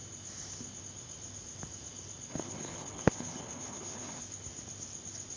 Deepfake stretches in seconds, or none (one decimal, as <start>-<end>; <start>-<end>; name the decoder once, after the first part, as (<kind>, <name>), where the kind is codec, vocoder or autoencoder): 2.3-4.2 (codec, HILCodec)